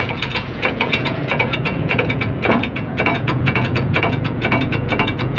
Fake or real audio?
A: fake